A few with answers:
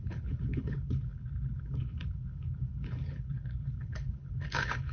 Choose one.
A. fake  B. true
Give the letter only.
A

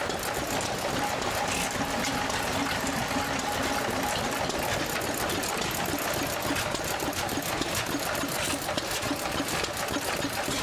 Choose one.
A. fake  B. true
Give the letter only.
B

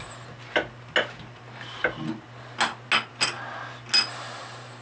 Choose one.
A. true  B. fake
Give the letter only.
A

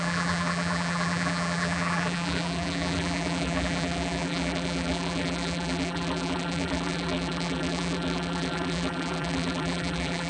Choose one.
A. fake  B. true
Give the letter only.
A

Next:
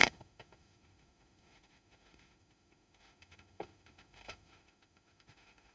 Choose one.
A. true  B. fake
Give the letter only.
B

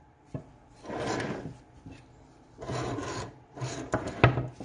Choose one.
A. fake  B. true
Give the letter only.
B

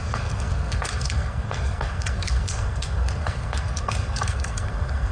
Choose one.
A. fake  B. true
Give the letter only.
A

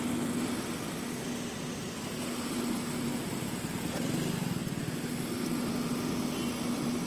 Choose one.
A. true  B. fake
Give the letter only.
A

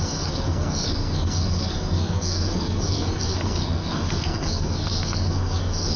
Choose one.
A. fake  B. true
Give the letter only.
A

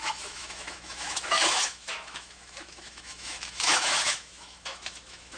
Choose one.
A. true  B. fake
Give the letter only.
B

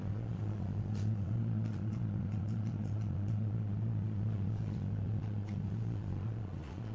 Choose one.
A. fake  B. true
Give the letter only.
A